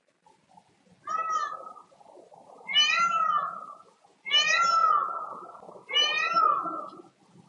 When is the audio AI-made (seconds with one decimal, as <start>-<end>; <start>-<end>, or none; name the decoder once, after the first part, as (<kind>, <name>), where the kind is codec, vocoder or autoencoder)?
none